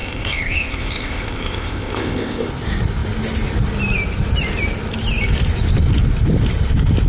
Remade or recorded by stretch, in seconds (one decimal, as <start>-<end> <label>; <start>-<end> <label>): 0.0-2.5 remade; 2.5-7.1 recorded